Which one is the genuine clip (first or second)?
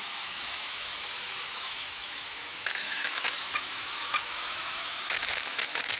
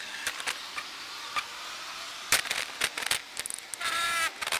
second